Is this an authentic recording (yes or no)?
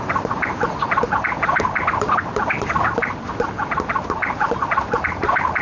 yes